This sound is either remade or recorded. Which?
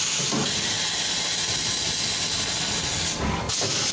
recorded